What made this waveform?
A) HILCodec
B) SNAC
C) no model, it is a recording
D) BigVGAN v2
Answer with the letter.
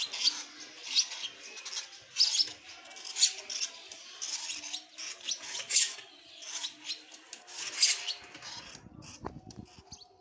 C